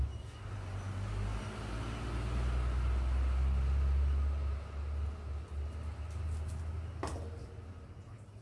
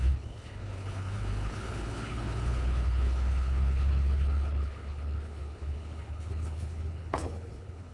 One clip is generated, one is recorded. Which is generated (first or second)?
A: second